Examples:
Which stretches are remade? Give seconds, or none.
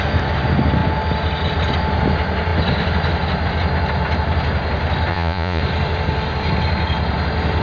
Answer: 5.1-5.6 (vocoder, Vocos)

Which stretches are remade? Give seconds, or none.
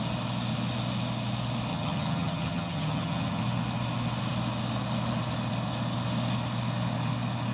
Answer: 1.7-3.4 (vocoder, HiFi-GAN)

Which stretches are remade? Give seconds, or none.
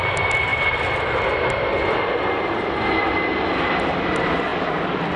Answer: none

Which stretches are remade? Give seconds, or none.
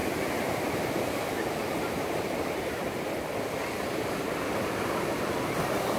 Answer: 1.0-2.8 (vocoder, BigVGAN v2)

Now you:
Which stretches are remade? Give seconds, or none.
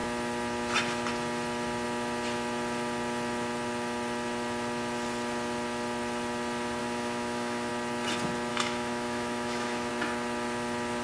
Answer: 6.8-7.7 (autoencoder, DAC-VAE); 8.5-9.9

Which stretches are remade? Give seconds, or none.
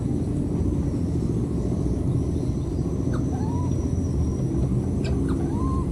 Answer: none